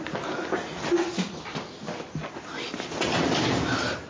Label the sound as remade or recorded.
recorded